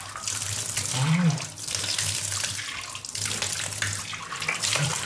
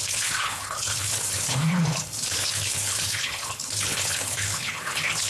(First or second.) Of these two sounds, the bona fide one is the first